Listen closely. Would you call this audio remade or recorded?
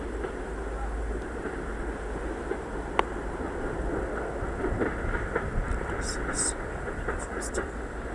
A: recorded